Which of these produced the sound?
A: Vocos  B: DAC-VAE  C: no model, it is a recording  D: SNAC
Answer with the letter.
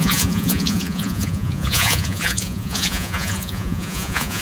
A